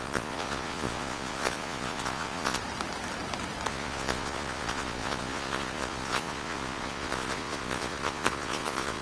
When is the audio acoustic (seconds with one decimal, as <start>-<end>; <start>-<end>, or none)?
2.6-3.7